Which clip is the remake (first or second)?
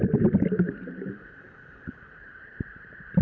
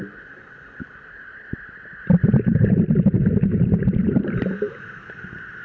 first